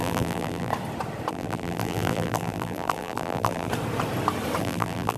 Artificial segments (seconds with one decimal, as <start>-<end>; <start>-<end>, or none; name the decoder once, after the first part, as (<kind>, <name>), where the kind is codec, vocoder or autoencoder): 0.0-0.7 (vocoder, BigVGAN v2); 1.3-3.7; 4.6-5.2